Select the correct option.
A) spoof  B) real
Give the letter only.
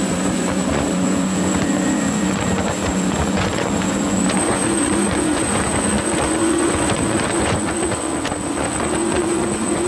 A